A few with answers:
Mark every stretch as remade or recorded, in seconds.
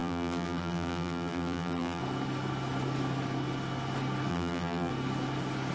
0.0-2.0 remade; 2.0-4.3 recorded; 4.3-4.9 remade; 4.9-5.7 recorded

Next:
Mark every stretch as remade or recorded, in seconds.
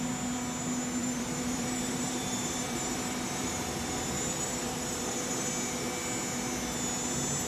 0.0-1.0 recorded; 1.0-5.5 remade; 5.5-7.5 recorded